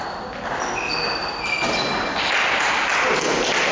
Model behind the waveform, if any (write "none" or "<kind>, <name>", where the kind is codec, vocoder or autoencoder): none